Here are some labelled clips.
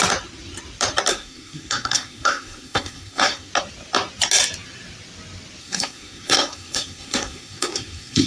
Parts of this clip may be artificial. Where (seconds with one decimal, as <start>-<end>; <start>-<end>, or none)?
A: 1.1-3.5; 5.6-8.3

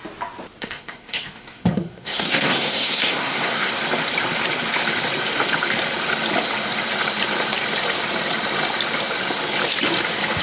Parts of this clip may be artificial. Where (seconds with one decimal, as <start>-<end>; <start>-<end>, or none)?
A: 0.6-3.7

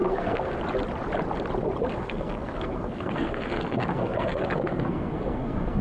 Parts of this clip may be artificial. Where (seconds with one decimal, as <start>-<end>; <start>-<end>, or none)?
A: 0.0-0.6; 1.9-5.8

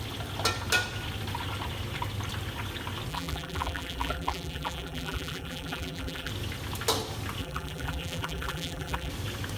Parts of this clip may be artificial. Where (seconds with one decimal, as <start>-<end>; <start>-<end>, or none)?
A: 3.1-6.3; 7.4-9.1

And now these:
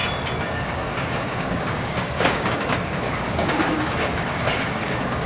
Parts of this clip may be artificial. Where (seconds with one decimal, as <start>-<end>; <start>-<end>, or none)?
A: 0.6-5.3